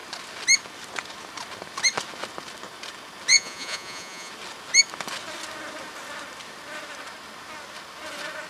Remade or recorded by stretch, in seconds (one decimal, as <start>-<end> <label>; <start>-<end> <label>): 0.0-3.3 recorded; 3.3-4.3 remade; 4.3-8.5 recorded